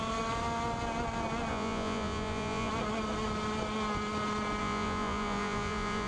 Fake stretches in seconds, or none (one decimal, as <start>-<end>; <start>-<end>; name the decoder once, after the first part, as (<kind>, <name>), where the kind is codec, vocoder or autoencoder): 1.5-2.7 (vocoder, Vocos); 4.6-6.1